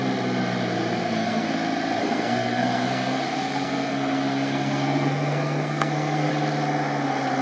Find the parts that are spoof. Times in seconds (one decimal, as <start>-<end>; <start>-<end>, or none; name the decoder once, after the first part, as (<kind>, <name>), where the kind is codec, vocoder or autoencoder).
1.0-1.5 (codec, SNAC); 2.0-6.3